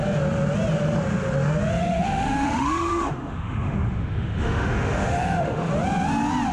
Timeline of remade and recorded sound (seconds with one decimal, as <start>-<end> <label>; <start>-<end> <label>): 0.0-1.8 recorded; 1.8-5.7 remade; 5.7-6.5 recorded